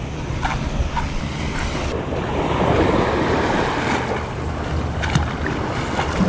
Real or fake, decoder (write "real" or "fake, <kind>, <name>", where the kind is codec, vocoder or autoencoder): real